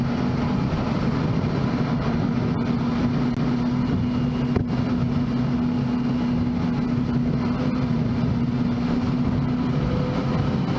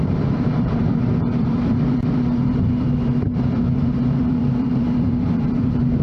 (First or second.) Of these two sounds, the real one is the first